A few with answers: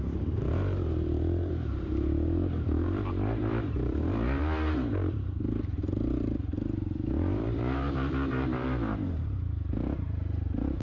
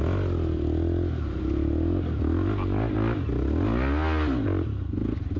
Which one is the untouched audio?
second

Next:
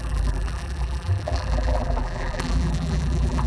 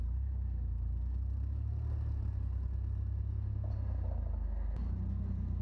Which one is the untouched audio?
second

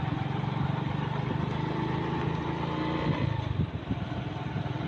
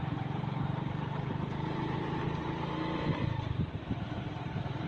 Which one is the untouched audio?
first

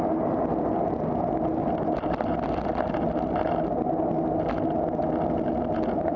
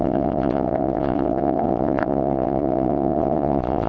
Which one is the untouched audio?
first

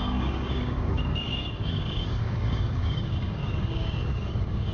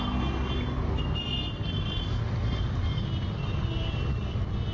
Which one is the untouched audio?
second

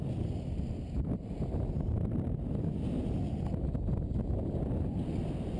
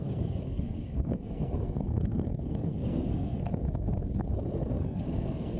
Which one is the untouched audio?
first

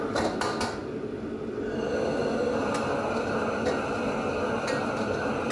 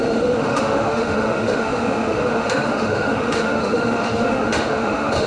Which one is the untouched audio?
first